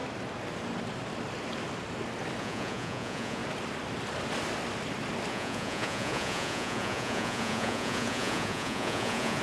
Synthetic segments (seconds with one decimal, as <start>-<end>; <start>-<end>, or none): 2.4-3.4; 5.3-9.4